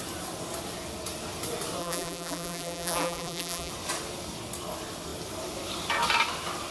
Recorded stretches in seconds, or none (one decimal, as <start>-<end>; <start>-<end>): 0.0-1.8; 3.7-6.7